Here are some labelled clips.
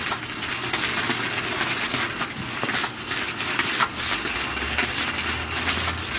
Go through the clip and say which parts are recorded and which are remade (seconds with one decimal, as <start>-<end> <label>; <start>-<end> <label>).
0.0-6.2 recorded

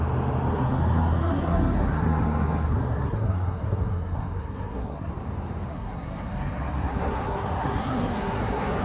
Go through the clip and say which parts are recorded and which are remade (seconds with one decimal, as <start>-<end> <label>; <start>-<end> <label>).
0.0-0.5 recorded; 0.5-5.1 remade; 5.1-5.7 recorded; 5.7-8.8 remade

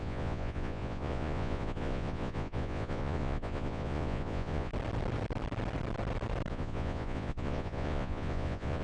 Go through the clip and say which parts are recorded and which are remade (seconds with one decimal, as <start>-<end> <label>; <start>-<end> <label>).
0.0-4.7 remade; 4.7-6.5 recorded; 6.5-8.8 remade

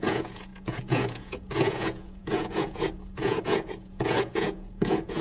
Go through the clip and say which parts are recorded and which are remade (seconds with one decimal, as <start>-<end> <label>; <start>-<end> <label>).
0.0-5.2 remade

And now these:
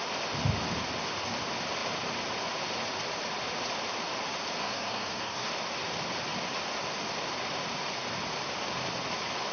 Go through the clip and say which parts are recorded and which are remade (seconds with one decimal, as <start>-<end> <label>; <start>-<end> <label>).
0.0-4.6 recorded; 4.6-5.5 remade; 5.5-9.5 recorded

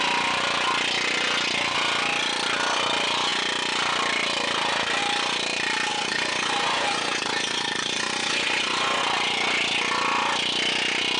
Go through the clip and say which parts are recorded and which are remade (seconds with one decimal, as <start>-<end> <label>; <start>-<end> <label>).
0.0-5.9 recorded; 5.9-9.0 remade; 9.0-11.2 recorded

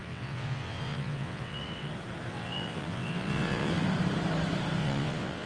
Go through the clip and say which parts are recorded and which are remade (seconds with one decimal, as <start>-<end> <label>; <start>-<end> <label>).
0.0-1.9 remade; 1.9-2.3 recorded; 2.3-3.8 remade; 3.8-4.8 recorded; 4.8-5.5 remade